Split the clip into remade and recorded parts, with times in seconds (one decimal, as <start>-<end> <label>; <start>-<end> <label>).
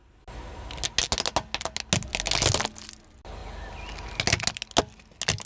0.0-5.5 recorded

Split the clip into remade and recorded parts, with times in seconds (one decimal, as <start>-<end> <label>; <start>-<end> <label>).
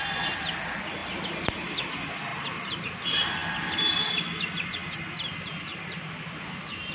0.0-6.9 recorded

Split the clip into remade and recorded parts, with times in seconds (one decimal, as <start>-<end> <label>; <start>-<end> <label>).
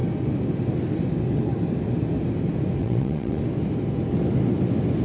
0.0-2.8 recorded; 2.8-3.4 remade; 3.4-5.0 recorded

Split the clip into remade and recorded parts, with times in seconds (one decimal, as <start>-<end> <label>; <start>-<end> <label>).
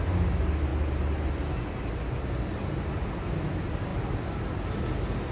0.0-5.3 recorded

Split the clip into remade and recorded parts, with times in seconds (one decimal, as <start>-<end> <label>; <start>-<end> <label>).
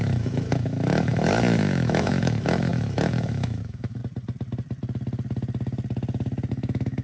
0.0-4.0 remade; 4.0-6.5 recorded; 6.5-7.0 remade